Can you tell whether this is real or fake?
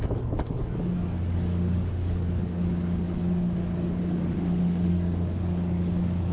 fake